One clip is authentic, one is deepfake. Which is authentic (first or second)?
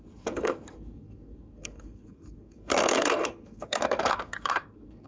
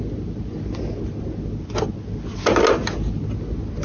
second